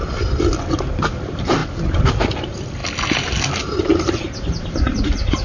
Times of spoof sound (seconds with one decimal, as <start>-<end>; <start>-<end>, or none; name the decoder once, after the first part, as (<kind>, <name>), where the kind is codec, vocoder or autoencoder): none